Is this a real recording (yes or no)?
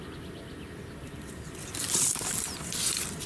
no